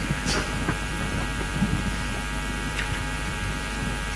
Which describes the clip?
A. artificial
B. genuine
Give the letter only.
A